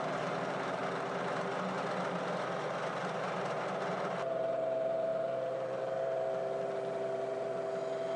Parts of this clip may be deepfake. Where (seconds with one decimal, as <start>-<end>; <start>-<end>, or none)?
0.0-0.8; 3.0-8.2